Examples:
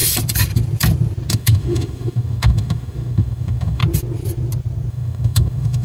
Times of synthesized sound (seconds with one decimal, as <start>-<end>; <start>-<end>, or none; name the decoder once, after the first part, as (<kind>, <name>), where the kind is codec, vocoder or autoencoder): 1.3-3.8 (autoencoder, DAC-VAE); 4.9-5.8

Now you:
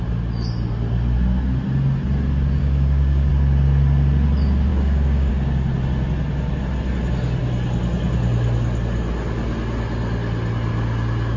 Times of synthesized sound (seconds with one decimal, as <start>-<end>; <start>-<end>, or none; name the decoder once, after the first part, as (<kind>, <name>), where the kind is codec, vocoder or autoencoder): 2.6-3.3 (codec, DAC); 4.7-5.3

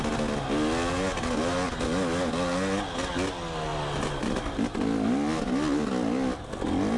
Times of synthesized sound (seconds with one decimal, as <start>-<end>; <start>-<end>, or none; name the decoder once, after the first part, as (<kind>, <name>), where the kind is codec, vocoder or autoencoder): none

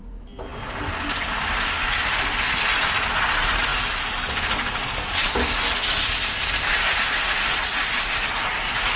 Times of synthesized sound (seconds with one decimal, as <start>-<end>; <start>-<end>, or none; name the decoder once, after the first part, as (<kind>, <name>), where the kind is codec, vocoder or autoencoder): none